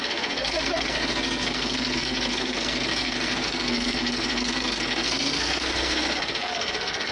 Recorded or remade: remade